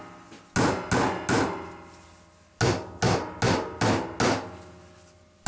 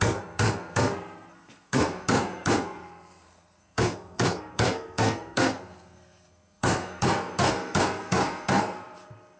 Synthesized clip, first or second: second